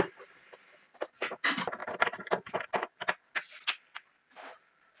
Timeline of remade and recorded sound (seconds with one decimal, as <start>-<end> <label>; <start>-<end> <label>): 0.0-5.0 recorded